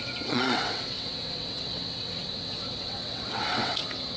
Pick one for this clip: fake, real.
fake